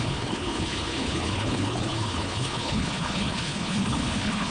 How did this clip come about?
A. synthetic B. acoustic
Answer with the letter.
A